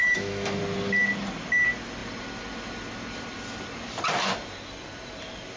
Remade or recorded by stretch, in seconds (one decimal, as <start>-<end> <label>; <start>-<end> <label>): 0.0-0.6 remade; 0.6-5.6 recorded